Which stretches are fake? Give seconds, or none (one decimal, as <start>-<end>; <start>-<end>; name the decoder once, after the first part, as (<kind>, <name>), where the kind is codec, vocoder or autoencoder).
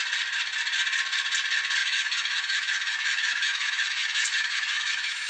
1.8-5.3 (autoencoder, DAC-VAE)